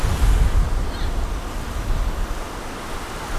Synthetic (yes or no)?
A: no